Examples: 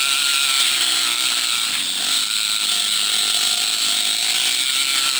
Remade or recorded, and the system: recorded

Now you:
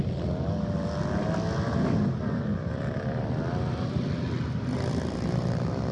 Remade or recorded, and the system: recorded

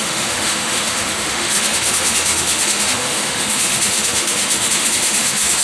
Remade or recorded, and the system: remade, autoencoder, DAC-VAE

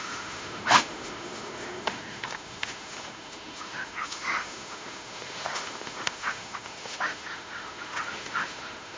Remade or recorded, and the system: remade, autoencoder, DAC-VAE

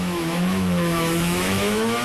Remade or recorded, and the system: remade, autoencoder, DAC-VAE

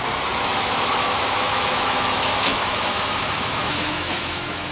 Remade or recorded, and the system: remade, autoencoder, DAC-VAE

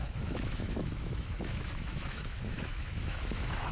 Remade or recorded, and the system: remade, autoencoder, DAC-VAE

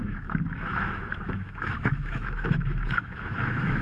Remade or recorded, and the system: remade, autoencoder, DAC-VAE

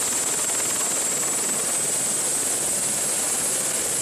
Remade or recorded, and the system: recorded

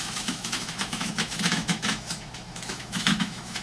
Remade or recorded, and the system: remade, autoencoder, DAC-VAE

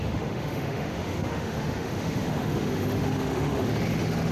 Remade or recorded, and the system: remade, autoencoder, DAC-VAE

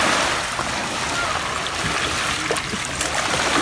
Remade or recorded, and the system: recorded